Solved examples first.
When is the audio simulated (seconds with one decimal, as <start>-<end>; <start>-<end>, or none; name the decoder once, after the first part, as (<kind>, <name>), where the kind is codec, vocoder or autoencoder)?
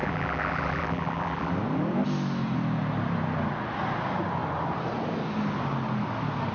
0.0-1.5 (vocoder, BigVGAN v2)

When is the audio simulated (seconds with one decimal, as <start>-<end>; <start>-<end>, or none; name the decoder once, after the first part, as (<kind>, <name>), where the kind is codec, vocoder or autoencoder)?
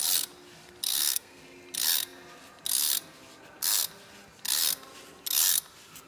0.9-1.4 (codec, SNAC)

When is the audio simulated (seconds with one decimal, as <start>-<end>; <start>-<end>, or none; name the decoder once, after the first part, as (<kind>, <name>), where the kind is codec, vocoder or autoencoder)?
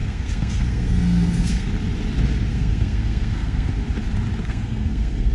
0.0-1.7 (codec, SNAC); 2.5-3.7; 4.4-5.3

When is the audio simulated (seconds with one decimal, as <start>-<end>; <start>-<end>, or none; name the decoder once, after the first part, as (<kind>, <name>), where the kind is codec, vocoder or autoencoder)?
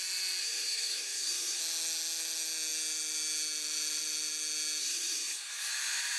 0.4-1.6 (codec, SNAC); 4.8-5.7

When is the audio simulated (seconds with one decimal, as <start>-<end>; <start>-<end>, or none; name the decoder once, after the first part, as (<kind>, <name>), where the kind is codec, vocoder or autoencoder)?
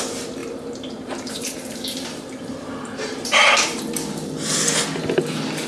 0.4-3.8 (vocoder, BigVGAN v2)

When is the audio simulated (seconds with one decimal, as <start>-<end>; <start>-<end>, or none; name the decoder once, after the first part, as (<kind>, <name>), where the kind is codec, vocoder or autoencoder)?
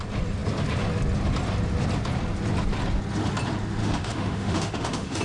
3.8-5.2 (autoencoder, DAC-VAE)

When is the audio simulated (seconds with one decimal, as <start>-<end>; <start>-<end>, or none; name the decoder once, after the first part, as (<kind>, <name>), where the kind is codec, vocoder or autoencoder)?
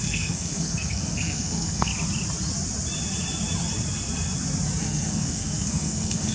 0.0-1.9 (codec, SNAC); 4.8-6.3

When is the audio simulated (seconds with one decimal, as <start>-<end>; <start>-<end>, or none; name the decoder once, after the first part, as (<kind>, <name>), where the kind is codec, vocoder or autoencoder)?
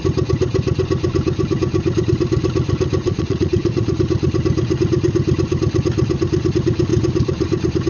3.0-4.0 (vocoder, Vocos)